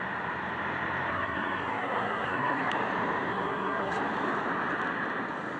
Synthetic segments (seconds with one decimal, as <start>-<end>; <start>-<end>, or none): 1.1-2.7; 3.3-4.0